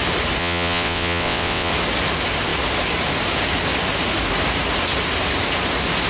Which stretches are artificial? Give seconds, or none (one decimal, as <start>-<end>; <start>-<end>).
0.4-1.7